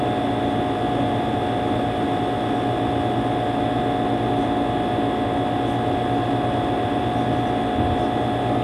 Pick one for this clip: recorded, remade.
recorded